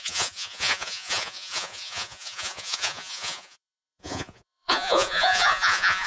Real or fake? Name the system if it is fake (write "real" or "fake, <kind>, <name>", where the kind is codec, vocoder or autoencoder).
fake, vocoder, Vocos